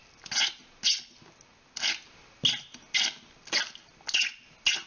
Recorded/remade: recorded